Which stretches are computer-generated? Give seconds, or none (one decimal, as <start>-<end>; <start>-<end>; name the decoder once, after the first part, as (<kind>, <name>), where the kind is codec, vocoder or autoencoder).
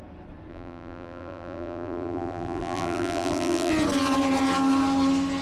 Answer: 0.5-3.7 (vocoder, BigVGAN v2)